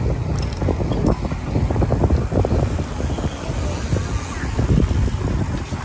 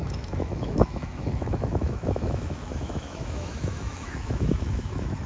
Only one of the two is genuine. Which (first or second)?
first